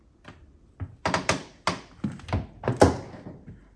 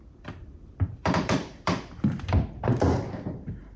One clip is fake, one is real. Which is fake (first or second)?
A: second